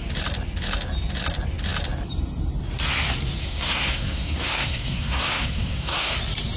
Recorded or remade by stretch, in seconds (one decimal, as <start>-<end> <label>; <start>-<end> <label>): 0.0-3.4 recorded; 3.4-6.1 remade; 6.1-6.6 recorded